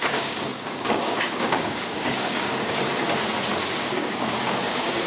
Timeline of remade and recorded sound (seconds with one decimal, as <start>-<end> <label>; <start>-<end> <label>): 0.0-2.5 remade; 2.5-3.8 recorded; 3.8-5.1 remade